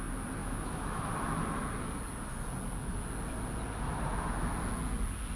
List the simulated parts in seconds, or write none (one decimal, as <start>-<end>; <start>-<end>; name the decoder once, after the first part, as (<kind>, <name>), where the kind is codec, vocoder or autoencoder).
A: 0.4-1.1 (autoencoder, DAC-VAE)